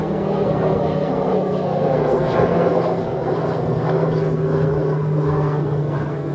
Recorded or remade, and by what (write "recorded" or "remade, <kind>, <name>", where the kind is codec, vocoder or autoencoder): remade, codec, SNAC